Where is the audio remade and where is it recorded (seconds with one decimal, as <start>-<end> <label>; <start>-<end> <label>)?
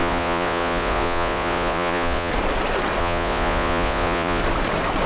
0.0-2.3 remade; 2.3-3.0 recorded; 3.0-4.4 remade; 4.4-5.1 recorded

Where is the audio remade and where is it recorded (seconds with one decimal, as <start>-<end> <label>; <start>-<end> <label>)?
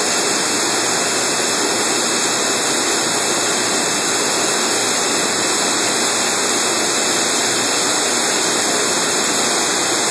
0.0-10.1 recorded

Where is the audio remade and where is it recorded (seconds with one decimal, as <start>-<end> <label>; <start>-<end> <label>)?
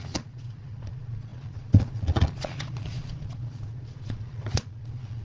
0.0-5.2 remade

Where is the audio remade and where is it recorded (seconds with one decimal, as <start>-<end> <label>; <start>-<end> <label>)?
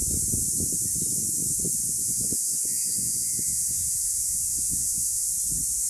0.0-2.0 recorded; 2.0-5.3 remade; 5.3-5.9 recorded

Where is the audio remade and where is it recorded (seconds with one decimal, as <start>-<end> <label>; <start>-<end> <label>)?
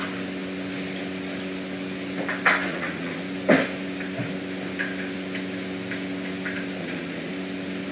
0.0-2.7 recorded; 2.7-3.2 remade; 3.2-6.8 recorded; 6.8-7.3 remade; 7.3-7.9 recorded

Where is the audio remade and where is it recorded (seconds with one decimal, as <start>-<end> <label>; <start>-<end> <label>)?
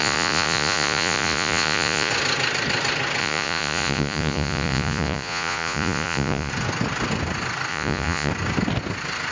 0.0-2.1 remade; 2.1-3.2 recorded; 3.2-6.5 remade; 6.5-7.7 recorded; 7.7-8.3 remade; 8.3-9.3 recorded